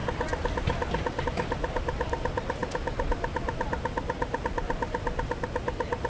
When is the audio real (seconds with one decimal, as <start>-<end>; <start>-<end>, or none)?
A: 0.0-6.1